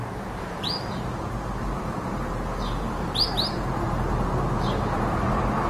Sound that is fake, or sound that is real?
fake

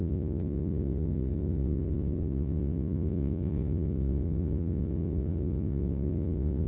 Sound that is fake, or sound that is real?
fake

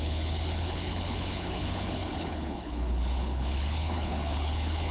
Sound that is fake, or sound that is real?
fake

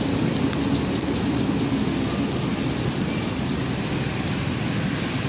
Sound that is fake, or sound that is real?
real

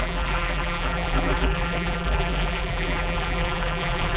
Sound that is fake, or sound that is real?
fake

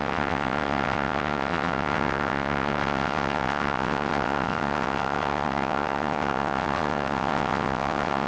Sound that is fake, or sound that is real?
fake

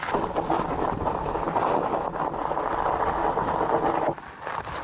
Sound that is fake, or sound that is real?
real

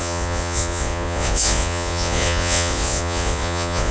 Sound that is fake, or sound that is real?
fake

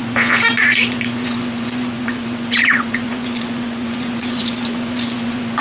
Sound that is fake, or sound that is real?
fake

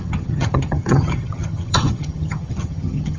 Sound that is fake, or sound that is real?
fake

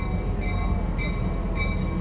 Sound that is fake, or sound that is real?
real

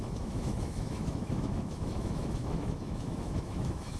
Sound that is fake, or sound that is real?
fake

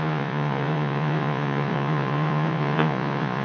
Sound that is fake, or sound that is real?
fake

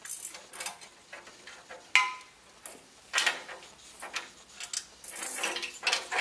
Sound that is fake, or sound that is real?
real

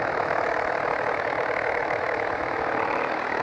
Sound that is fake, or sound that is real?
fake